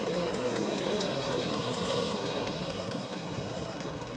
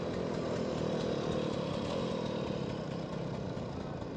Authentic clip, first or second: second